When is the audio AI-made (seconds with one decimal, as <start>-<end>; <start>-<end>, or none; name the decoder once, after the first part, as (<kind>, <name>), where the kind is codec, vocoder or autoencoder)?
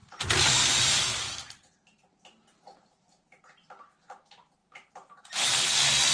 0.0-3.4 (vocoder, BigVGAN v2); 4.6-5.6